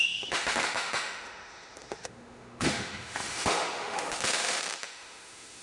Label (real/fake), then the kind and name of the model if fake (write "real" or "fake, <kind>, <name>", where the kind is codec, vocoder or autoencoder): fake, autoencoder, DAC-VAE